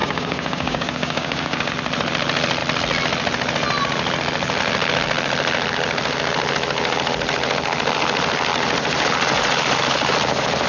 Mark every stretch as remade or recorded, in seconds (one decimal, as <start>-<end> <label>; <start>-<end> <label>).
0.0-1.7 remade; 1.7-10.7 recorded